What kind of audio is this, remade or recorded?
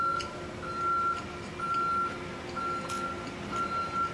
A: recorded